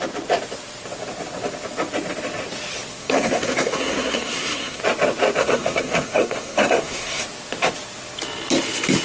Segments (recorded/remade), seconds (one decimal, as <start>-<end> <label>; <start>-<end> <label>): 0.0-3.0 recorded; 3.0-4.8 remade; 4.8-5.4 recorded; 5.4-7.2 remade; 7.2-9.0 recorded